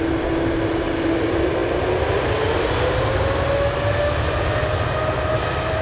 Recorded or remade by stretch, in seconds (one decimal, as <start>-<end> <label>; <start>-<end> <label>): 0.0-5.8 recorded